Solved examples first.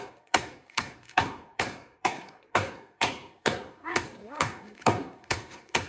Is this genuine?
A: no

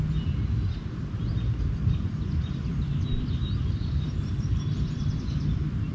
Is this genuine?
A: yes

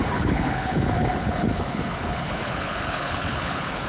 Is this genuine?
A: no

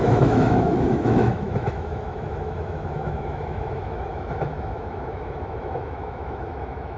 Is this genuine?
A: no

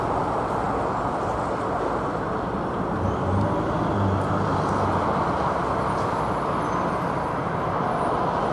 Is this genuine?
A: yes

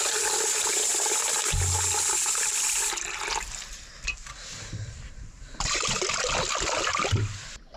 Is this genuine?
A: yes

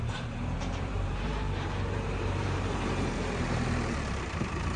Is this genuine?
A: no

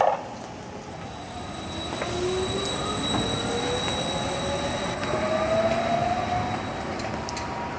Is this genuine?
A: yes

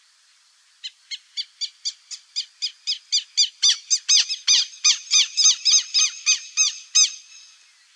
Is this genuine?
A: yes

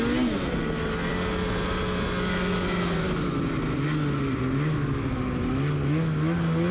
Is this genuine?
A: yes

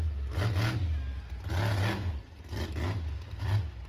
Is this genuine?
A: yes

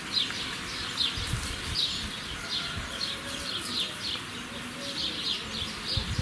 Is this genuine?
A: yes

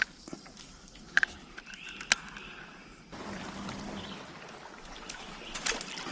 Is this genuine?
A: yes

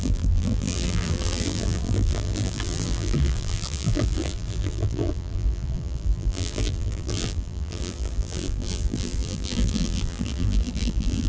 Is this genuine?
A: no